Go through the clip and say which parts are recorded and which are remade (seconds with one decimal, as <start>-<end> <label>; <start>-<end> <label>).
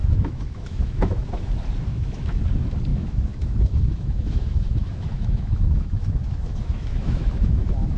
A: 0.0-1.5 remade; 1.5-1.9 recorded; 1.9-2.4 remade; 2.4-2.9 recorded; 2.9-8.0 remade